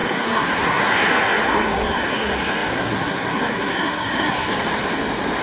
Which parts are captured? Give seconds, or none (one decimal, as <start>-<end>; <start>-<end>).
4.5-5.4